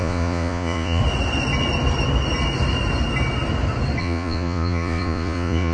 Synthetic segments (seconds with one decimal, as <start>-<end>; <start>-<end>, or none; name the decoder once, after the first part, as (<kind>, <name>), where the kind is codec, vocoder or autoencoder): 0.0-1.0 (vocoder, Vocos); 4.0-5.7